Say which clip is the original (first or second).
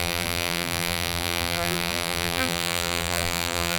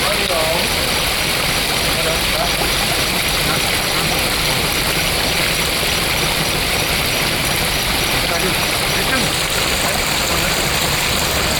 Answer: second